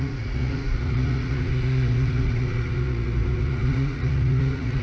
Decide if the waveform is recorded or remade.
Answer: remade